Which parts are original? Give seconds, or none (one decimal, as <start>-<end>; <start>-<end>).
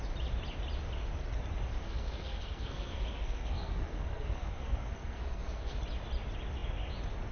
0.0-1.8; 5.8-7.3